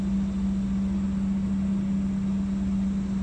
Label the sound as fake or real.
real